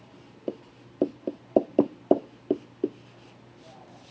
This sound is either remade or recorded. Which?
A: recorded